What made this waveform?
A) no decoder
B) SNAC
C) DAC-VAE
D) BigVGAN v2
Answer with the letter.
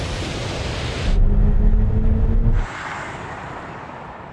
A